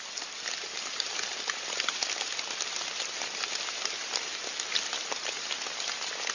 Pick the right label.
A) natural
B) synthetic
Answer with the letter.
A